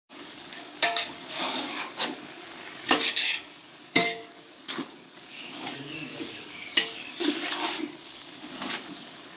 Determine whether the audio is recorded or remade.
remade